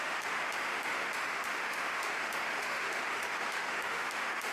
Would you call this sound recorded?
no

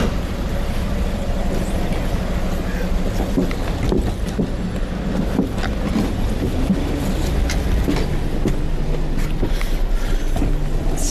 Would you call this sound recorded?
yes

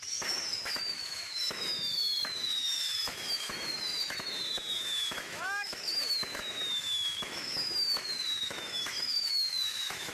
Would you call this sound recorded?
no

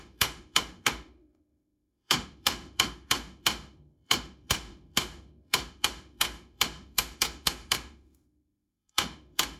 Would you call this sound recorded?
no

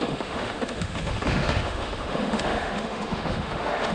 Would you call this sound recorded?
no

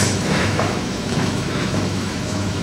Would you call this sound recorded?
no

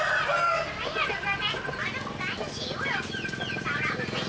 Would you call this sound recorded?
yes